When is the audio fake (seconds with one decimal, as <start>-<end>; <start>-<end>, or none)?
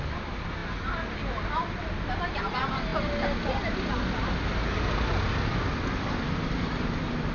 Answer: none